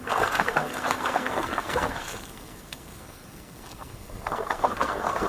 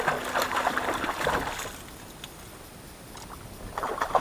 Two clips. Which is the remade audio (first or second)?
first